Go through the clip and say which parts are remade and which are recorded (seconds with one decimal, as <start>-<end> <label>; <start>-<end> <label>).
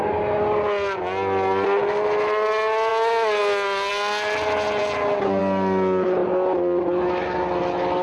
0.0-8.0 recorded